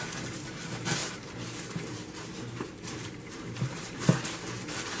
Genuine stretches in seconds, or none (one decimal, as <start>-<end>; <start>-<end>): 0.0-1.0; 4.0-5.0